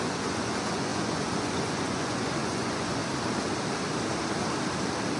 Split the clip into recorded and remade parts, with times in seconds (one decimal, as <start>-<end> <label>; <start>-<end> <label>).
0.0-3.0 remade; 3.0-5.2 recorded

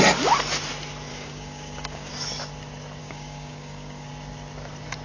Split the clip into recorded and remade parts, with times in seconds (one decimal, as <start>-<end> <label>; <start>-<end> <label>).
0.0-1.1 recorded; 1.1-2.1 remade; 2.1-3.0 recorded; 3.0-4.1 remade; 4.1-5.0 recorded

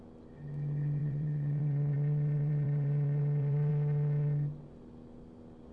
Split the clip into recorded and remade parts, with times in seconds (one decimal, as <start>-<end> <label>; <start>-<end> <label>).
0.0-1.0 recorded; 1.0-3.7 remade; 3.7-5.7 recorded

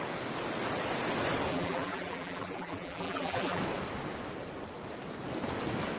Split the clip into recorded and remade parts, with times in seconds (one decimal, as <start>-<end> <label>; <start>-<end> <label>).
0.0-1.5 recorded; 1.5-3.6 remade; 3.6-6.0 recorded

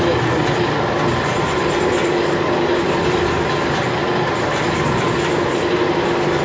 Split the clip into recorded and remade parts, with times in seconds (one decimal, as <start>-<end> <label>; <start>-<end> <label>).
0.0-6.4 recorded